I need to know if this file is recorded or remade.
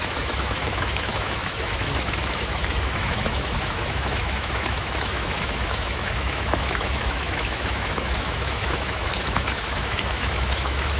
remade